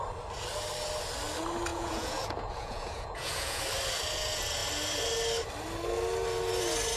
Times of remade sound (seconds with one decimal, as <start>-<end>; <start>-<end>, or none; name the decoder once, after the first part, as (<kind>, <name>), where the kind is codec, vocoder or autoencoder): 1.7-3.6 (vocoder, Vocos)